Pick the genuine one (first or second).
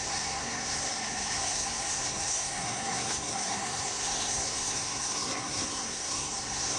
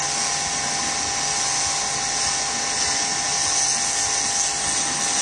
second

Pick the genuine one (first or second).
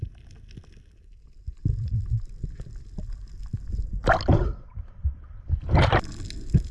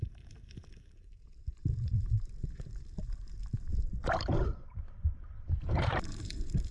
first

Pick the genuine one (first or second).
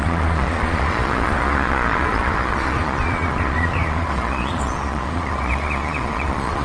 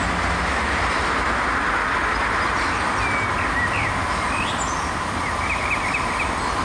second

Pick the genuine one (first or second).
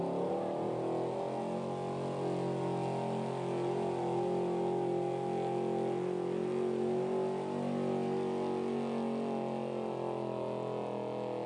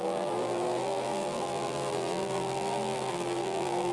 first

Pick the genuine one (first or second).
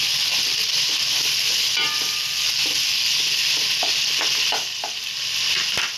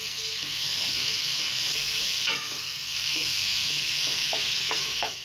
first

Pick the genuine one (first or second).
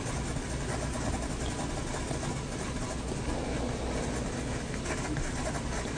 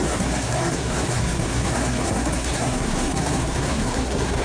first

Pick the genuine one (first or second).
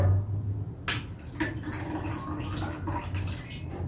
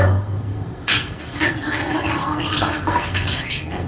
first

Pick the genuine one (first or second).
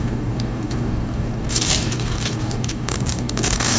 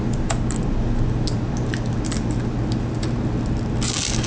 second